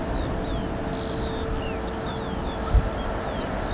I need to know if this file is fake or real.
real